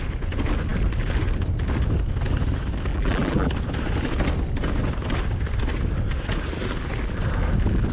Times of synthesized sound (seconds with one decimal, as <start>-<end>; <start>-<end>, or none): 2.9-3.5